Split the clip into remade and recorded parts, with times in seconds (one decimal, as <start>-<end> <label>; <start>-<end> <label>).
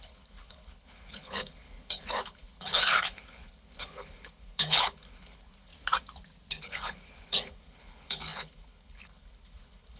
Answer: 0.0-5.7 remade; 5.7-6.5 recorded; 6.5-10.0 remade